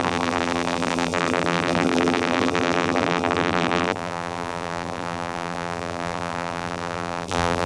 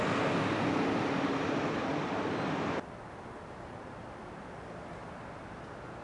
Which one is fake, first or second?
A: first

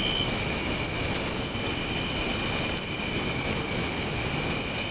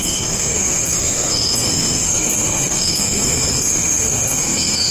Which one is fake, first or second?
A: second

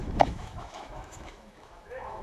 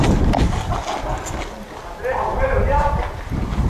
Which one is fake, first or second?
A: first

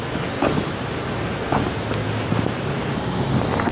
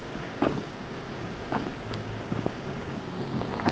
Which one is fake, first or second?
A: second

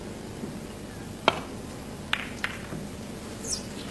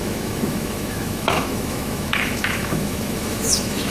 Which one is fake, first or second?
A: second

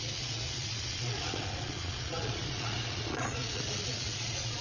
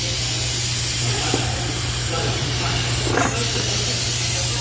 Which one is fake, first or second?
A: first